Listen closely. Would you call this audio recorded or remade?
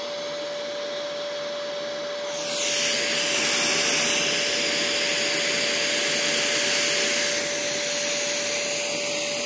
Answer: recorded